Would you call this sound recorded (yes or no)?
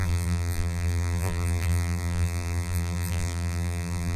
no